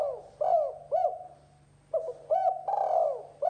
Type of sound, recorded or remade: recorded